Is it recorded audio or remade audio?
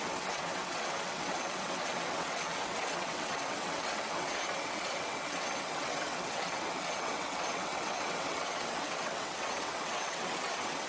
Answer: remade